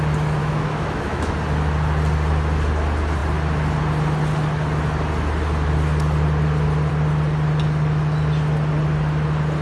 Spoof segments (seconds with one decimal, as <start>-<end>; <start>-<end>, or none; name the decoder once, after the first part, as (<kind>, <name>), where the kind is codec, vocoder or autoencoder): 0.4-1.3 (autoencoder, DAC-VAE)